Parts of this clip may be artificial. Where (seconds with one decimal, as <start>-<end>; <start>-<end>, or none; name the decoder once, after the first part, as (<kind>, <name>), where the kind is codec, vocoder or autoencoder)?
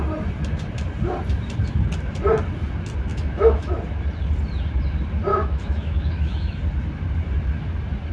3.1-3.7 (autoencoder, DAC-VAE); 5.3-6.6